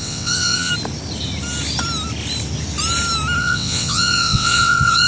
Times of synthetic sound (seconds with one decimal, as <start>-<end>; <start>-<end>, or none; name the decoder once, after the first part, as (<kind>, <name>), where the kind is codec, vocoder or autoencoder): 0.0-0.7 (vocoder, WaveNeXt); 3.4-5.1